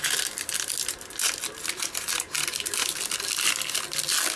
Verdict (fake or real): real